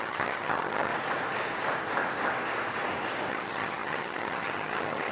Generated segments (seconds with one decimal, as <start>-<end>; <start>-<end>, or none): 0.0-0.9; 3.3-5.1